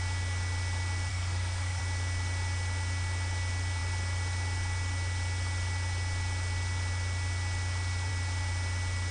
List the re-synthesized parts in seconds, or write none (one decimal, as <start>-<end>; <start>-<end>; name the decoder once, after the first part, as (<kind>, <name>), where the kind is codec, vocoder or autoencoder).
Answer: 1.1-1.8 (codec, SNAC)